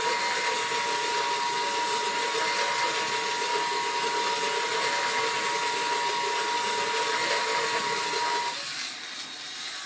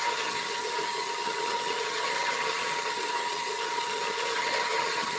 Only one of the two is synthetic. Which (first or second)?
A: second